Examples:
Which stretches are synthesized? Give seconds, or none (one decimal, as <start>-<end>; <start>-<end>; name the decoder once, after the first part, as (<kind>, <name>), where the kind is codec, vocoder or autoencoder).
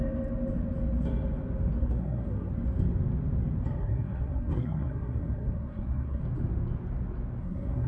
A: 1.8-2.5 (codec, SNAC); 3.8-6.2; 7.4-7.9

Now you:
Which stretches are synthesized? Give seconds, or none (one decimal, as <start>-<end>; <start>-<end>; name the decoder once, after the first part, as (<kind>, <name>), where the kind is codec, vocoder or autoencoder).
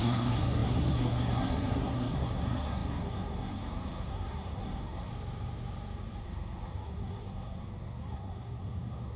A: 0.0-5.1 (codec, SNAC); 6.2-9.2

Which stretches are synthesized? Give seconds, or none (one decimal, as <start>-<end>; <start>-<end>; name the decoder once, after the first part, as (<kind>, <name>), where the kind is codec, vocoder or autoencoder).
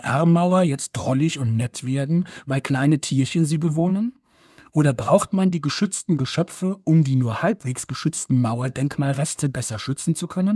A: 0.0-10.6 (codec, SNAC)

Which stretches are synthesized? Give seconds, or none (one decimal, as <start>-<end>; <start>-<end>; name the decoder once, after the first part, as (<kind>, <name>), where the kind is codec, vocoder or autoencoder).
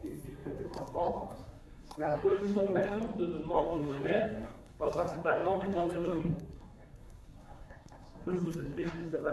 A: 0.0-3.0 (codec, SNAC); 3.5-9.3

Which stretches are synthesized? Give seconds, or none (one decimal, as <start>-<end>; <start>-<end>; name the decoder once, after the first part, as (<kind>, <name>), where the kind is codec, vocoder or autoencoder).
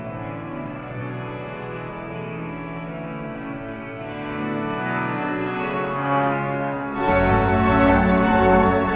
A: 0.0-1.0 (codec, SNAC); 1.9-9.0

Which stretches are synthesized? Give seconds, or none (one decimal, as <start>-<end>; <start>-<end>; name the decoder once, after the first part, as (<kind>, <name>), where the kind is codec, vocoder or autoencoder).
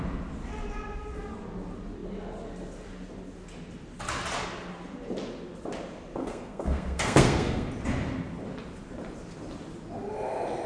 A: 6.2-7.7 (codec, SNAC)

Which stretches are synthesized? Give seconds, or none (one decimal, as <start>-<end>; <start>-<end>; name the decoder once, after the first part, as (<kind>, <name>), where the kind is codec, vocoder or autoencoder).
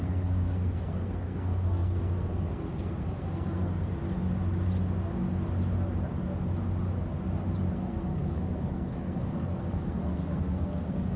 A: 0.0-3.9 (codec, SNAC); 7.7-11.2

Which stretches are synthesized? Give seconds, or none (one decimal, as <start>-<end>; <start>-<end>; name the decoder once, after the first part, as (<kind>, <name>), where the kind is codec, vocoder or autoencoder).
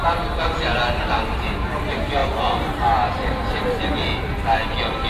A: none